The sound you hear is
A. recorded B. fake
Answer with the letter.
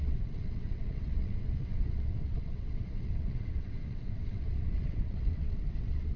B